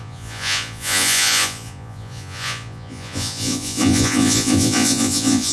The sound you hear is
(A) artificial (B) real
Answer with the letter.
A